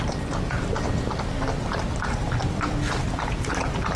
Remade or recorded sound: recorded